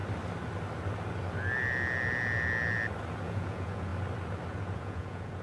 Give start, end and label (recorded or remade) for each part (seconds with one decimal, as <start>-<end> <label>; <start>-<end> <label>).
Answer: 0.0-3.2 recorded; 3.2-3.9 remade; 3.9-4.5 recorded; 4.5-5.4 remade